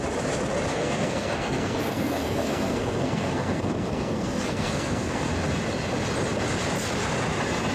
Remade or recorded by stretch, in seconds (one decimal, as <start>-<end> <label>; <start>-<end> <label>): 0.0-0.7 recorded; 0.7-5.3 remade; 5.3-7.7 recorded